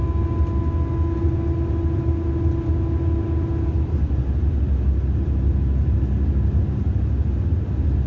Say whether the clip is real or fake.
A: real